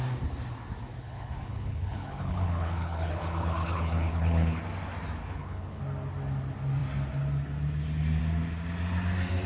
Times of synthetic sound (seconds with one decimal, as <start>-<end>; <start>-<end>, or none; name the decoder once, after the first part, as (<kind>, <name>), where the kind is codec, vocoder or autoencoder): 1.0-4.6 (codec, HILCodec); 5.2-5.8